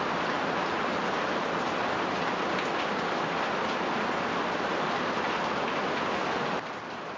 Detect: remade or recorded recorded